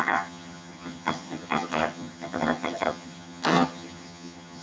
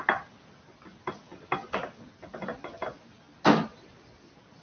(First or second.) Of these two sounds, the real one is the second